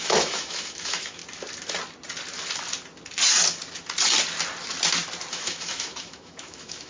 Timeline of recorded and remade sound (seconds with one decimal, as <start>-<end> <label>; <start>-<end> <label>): 0.0-1.2 remade; 1.2-5.3 recorded; 5.3-6.9 remade